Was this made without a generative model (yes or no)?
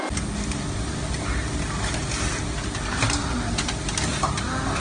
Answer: yes